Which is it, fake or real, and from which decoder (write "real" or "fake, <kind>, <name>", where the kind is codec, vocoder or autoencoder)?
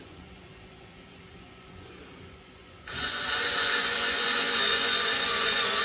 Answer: fake, vocoder, Vocos